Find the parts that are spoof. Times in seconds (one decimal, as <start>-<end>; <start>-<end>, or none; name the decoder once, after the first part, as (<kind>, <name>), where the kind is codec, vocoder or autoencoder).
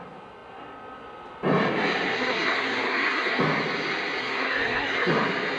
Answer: 2.1-3.4 (codec, SNAC); 4.2-5.1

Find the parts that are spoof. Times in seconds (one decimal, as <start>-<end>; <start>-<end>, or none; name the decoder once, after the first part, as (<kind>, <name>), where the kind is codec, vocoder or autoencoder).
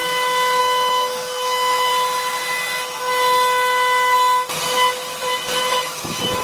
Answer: 0.6-1.9 (autoencoder, DAC-VAE); 5.6-6.4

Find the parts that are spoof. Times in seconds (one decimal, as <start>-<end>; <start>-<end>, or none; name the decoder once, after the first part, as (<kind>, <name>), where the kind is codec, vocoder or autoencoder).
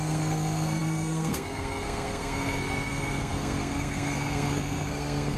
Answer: 0.0-5.4 (codec, SNAC)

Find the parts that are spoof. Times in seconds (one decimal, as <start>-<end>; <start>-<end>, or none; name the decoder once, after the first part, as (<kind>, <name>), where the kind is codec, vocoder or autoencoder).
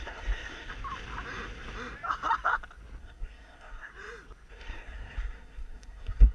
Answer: 0.0-0.7 (codec, SNAC); 3.0-3.9; 4.5-6.3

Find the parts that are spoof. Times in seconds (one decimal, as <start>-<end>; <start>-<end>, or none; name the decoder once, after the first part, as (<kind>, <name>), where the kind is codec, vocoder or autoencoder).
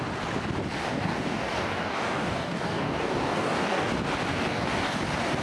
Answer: 0.8-3.9 (codec, DAC); 4.3-5.0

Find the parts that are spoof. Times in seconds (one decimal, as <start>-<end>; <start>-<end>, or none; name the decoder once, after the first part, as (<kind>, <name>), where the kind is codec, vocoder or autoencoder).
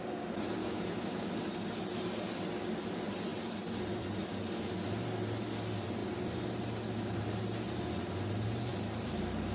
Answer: 0.6-1.3 (autoencoder, DAC-VAE)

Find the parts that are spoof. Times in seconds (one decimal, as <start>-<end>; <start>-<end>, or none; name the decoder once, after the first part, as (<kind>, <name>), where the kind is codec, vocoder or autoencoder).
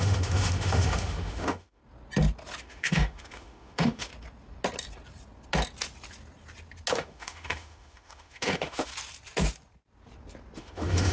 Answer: 0.0-1.8 (autoencoder, DAC-VAE); 2.6-4.1; 6.9-8.9; 10.6-11.1